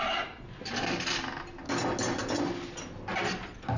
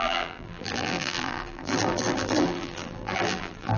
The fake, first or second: second